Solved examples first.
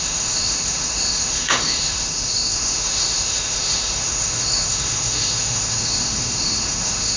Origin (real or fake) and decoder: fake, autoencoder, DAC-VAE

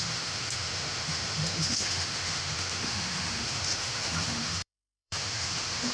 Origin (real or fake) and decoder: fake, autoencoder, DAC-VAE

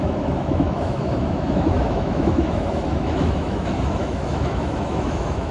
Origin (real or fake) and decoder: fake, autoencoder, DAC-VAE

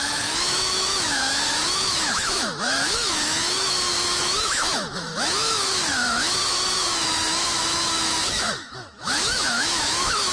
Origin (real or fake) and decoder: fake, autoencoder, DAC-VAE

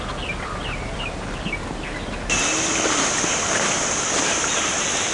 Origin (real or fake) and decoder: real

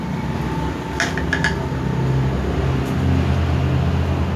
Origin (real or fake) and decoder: real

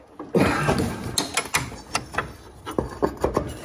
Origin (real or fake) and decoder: real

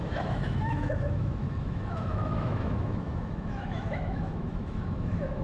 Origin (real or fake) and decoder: fake, autoencoder, DAC-VAE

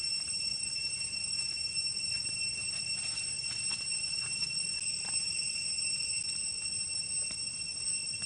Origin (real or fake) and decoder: real